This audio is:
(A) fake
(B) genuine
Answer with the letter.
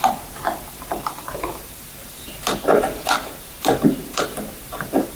A